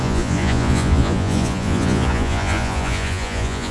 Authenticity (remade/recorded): remade